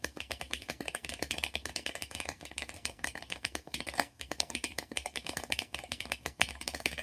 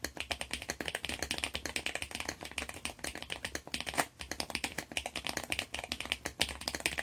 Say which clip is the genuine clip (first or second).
second